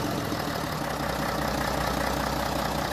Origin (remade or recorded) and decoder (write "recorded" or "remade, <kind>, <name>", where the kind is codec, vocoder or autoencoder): recorded